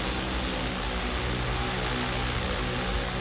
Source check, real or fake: real